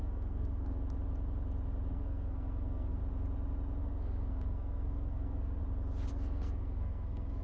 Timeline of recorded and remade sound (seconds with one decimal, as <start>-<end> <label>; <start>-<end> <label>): 0.0-0.8 remade; 0.8-1.9 recorded; 1.9-3.0 remade; 3.0-3.8 recorded; 3.8-5.6 remade; 5.6-6.1 recorded; 6.1-7.4 remade